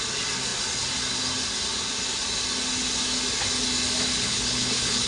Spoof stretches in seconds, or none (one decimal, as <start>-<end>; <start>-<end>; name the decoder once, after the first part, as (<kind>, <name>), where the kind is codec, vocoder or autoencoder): 4.1-5.1 (codec, HILCodec)